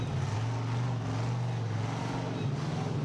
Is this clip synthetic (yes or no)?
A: no